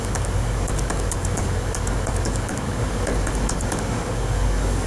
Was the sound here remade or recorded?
remade